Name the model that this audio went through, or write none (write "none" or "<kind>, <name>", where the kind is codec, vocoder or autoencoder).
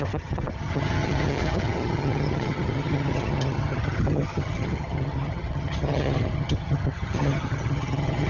vocoder, HiFi-GAN